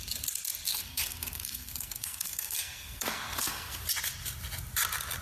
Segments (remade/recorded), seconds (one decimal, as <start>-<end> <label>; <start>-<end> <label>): 0.0-0.7 recorded; 0.7-3.8 remade; 3.8-5.2 recorded